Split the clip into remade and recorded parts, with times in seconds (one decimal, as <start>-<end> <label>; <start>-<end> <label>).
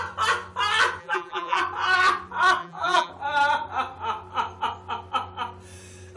0.0-1.0 recorded; 1.0-1.6 remade; 1.6-2.6 recorded; 2.6-3.1 remade; 3.1-6.2 recorded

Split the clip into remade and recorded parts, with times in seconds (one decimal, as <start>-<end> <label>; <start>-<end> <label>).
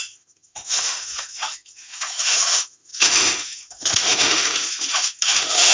0.0-5.7 remade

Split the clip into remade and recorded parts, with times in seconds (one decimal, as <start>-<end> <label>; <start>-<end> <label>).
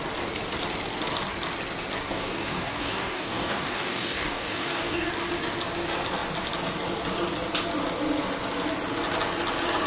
0.0-2.0 recorded; 2.0-5.1 remade; 5.1-9.9 recorded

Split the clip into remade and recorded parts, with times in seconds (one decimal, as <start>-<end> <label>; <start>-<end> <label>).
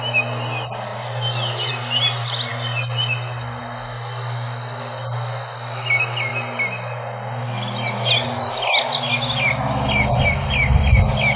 0.0-11.4 recorded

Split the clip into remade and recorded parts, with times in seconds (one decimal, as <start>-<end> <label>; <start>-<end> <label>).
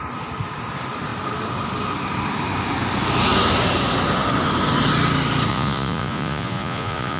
0.0-5.5 recorded; 5.5-7.2 remade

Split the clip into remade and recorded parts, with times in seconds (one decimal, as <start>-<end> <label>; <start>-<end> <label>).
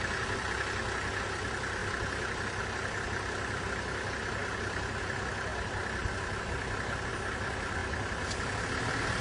0.0-9.2 recorded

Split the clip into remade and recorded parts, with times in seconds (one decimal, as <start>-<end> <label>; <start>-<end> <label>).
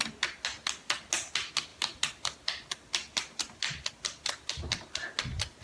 0.0-5.6 recorded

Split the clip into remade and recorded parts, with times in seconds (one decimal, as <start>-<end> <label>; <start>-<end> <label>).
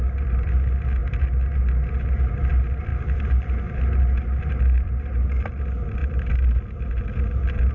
0.0-2.9 recorded; 2.9-4.9 remade; 4.9-6.0 recorded; 6.0-7.0 remade; 7.0-7.7 recorded